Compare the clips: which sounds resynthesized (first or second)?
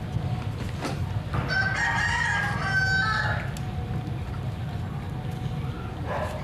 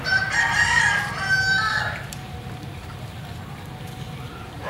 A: second